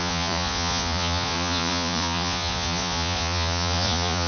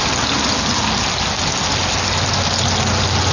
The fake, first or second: first